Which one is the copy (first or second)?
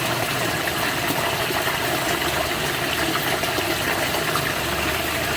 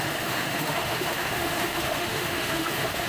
second